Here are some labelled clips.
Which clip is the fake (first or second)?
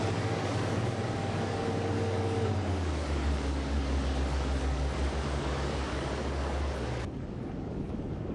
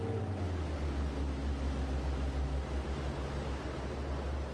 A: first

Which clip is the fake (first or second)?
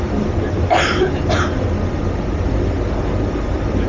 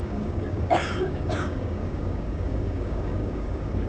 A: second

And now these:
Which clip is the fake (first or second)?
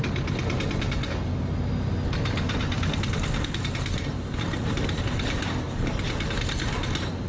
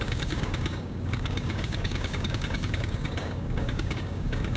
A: second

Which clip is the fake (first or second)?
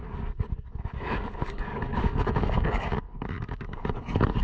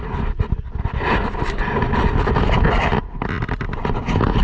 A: first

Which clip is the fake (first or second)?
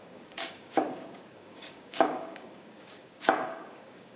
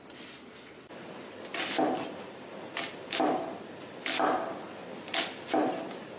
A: first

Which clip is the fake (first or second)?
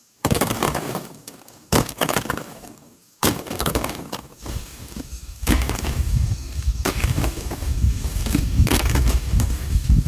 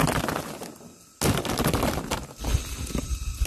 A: first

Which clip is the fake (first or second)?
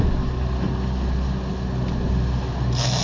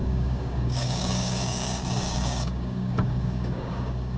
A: second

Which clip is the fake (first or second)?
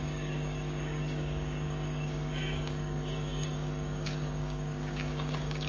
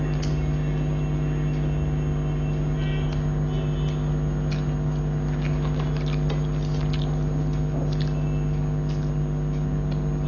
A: first